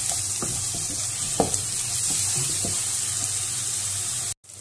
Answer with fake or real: real